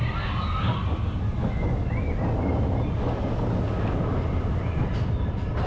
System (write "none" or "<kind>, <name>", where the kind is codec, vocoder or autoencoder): none